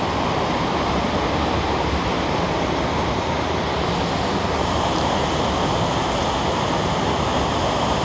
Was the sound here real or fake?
real